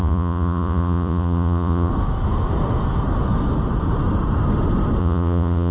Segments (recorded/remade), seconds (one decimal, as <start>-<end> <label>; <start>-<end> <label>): 0.0-1.9 remade; 1.9-5.0 recorded; 5.0-5.7 remade